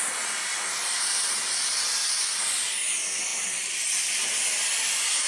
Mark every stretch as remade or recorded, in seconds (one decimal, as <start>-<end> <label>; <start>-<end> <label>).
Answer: 0.0-5.3 recorded